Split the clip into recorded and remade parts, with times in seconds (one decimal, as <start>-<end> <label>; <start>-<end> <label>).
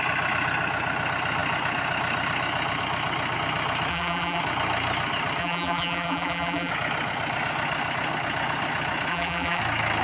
0.0-3.9 recorded; 3.9-4.4 remade; 4.4-5.4 recorded; 5.4-6.7 remade; 6.7-9.1 recorded; 9.1-9.6 remade; 9.6-10.0 recorded